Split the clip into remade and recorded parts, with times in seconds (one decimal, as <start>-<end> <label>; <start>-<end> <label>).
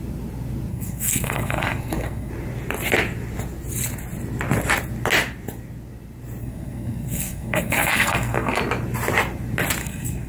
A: 0.0-0.7 recorded; 0.7-2.3 remade; 2.3-6.4 recorded; 6.4-8.6 remade; 8.6-9.8 recorded; 9.8-10.3 remade